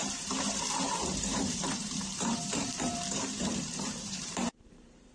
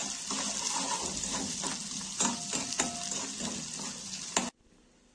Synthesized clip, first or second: first